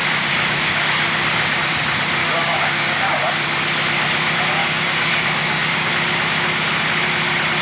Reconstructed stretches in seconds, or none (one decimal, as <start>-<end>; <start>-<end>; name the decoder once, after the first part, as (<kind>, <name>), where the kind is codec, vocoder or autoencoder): 0.0-1.6 (codec, DAC); 2.2-3.3; 4.6-5.9